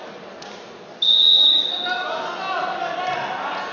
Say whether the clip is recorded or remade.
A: recorded